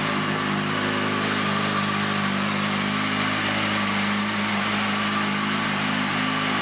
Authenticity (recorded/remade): recorded